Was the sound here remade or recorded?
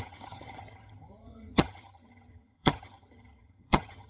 remade